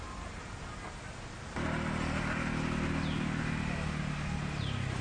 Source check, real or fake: real